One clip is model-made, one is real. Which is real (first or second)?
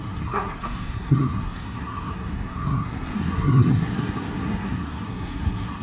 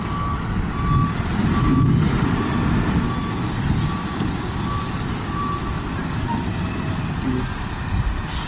second